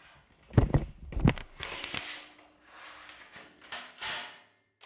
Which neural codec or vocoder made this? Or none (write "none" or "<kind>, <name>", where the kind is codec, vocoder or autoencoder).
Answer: none